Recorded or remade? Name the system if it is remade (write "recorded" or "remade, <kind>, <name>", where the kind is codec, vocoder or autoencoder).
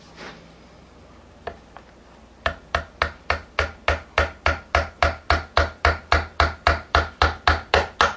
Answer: recorded